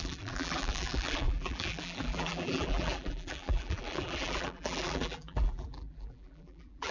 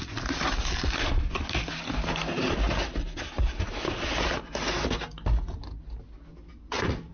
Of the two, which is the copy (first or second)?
first